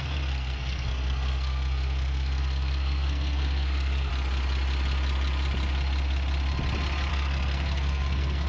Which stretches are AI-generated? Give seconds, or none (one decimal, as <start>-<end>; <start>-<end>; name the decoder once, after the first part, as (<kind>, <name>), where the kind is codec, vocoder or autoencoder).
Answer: 0.0-4.1 (codec, SNAC); 7.1-8.5